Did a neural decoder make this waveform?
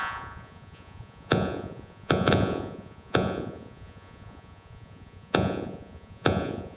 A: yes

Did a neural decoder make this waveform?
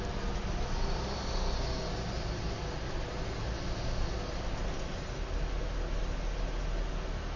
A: no